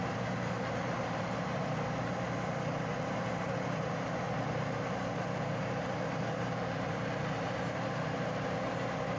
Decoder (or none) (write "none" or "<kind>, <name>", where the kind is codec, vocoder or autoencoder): vocoder, BigVGAN v2